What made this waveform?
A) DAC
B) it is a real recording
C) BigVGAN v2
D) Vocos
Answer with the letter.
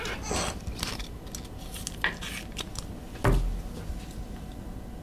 B